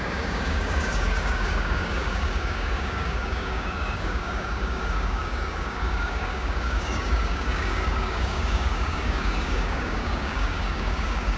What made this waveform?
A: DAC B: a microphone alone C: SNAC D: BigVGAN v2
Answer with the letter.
A